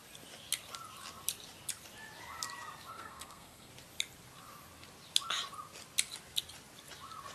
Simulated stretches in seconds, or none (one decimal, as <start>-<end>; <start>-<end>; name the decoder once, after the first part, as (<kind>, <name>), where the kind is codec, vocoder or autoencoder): 2.9-3.7 (codec, SNAC)